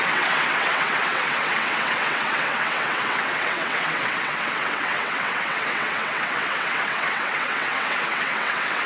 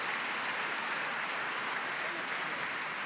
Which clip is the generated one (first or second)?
first